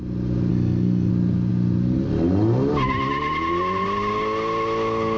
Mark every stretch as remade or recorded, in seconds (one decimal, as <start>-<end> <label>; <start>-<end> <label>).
0.0-0.5 recorded; 0.5-1.1 remade; 1.1-5.2 recorded